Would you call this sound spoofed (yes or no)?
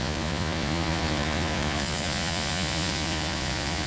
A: yes